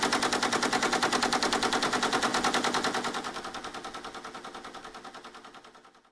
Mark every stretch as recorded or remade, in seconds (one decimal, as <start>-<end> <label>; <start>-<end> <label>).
0.0-6.1 recorded